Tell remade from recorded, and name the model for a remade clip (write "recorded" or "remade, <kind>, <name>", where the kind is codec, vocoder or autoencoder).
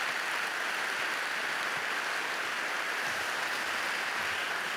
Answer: recorded